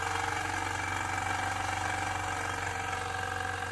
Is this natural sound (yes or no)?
yes